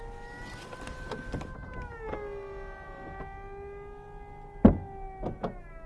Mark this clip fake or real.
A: real